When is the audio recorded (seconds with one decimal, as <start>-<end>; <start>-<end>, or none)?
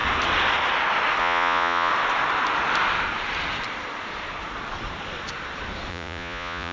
0.0-1.2; 1.9-5.9